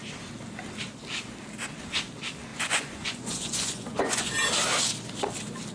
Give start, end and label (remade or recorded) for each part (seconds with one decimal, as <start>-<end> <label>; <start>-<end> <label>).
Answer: 0.0-2.5 recorded; 2.5-4.3 remade; 4.3-5.7 recorded